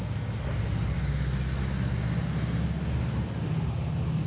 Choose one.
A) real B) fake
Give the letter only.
A